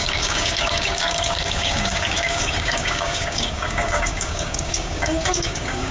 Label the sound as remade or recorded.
remade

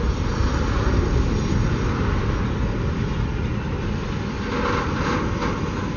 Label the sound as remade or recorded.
recorded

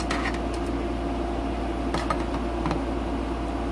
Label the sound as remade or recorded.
recorded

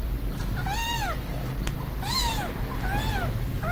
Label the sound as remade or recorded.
recorded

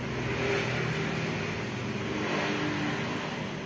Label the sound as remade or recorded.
recorded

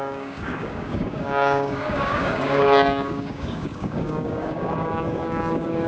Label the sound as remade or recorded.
remade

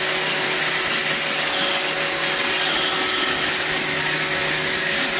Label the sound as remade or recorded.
recorded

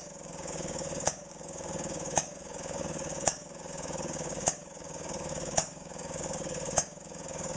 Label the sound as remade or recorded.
remade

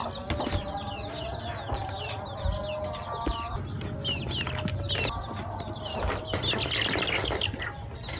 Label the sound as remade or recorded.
recorded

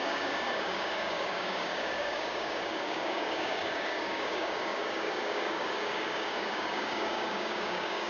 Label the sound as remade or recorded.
remade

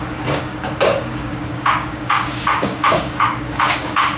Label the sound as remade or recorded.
remade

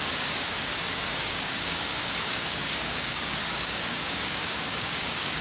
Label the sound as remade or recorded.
remade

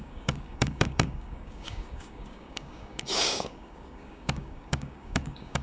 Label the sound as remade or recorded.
remade